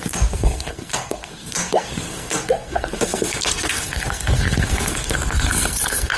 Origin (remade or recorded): remade